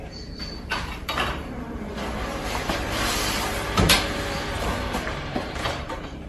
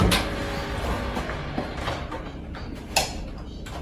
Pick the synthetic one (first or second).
first